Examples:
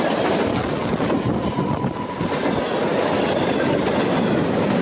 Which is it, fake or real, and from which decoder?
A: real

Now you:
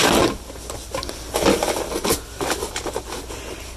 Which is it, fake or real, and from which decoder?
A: real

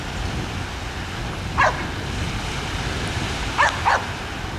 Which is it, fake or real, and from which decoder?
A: real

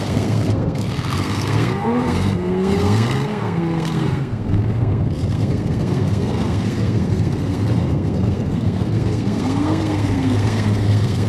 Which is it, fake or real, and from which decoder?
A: fake, codec, SNAC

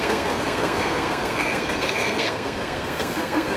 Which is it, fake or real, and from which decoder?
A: fake, codec, SNAC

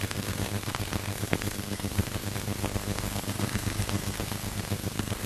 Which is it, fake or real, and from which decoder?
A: fake, codec, SNAC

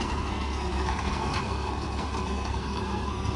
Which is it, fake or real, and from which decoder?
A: fake, codec, SNAC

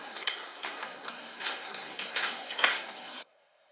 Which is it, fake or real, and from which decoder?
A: fake, codec, SNAC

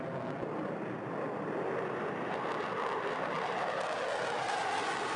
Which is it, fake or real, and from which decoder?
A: real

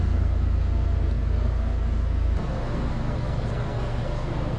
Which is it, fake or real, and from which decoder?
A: fake, codec, SNAC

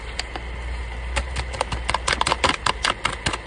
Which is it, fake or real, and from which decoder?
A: real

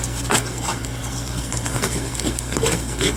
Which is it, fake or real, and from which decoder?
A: fake, codec, SNAC